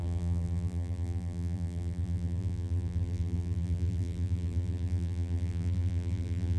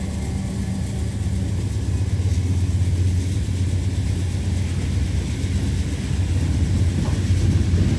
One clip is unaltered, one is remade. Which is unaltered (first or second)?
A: second